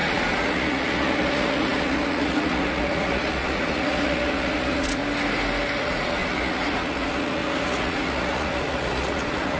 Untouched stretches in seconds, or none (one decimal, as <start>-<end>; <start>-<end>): 5.0-5.8